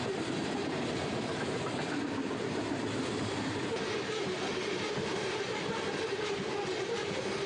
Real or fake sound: real